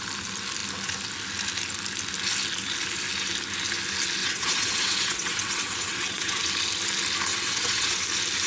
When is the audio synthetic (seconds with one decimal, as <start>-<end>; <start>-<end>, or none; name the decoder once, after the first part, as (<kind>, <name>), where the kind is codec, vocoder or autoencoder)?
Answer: 4.2-6.4 (vocoder, WaveNeXt); 7.3-8.0